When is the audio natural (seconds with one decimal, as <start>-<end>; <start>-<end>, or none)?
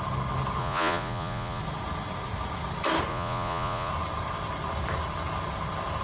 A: 0.0-0.6; 1.6-3.1; 3.9-6.0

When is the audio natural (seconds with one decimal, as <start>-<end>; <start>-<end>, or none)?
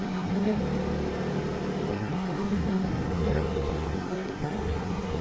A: 0.6-1.9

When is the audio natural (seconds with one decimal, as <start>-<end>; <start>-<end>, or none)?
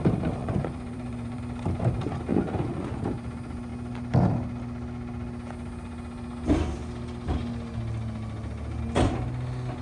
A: 0.0-0.4; 1.4-2.3; 3.0-9.8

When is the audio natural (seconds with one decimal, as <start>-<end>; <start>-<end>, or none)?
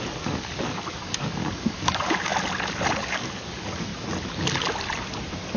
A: 2.3-3.0; 3.9-5.6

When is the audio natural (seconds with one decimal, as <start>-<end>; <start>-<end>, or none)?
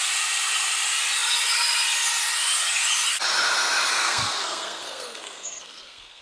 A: 0.0-3.9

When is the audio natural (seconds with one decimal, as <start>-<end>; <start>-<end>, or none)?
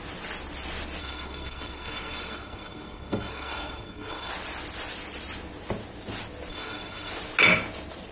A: 0.0-1.0; 4.3-6.5; 7.1-8.1